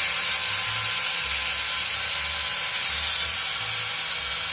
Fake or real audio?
real